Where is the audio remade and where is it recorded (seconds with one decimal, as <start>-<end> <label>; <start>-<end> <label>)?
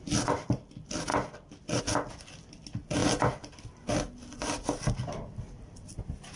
0.0-3.0 recorded; 3.0-6.0 remade; 6.0-6.4 recorded